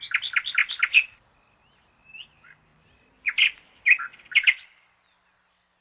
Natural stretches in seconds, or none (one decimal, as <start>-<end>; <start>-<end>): 0.0-5.8